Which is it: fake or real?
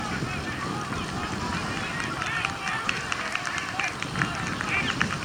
real